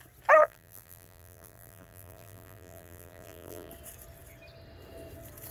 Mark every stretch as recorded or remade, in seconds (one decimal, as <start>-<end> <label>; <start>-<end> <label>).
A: 0.0-0.4 recorded; 0.4-3.7 remade; 3.7-5.5 recorded

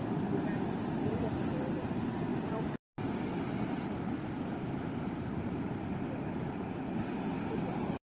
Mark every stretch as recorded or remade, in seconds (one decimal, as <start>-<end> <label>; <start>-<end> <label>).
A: 0.0-0.5 remade; 0.5-1.1 recorded; 1.1-5.8 remade; 5.8-8.1 recorded

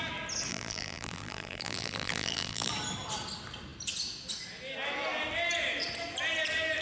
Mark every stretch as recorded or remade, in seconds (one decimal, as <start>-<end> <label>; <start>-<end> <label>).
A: 0.0-0.5 recorded; 0.5-2.7 remade; 2.7-6.8 recorded